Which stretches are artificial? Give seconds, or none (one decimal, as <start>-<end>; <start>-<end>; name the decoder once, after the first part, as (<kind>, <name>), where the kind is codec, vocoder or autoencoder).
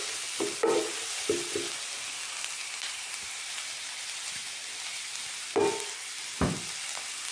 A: 2.6-3.9 (vocoder, BigVGAN v2)